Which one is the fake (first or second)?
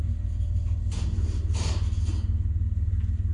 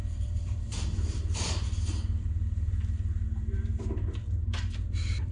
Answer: second